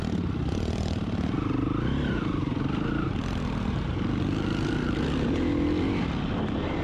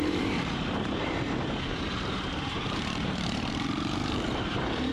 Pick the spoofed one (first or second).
second